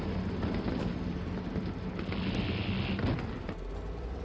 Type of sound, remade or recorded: recorded